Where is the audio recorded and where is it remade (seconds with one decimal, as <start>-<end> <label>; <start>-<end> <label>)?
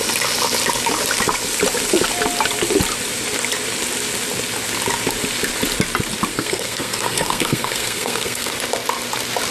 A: 0.0-6.3 recorded; 6.3-8.5 remade; 8.5-9.5 recorded